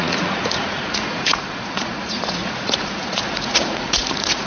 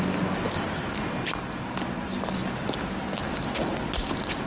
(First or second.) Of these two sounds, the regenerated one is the first